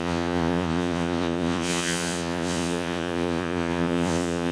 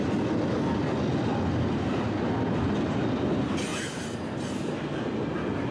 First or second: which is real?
second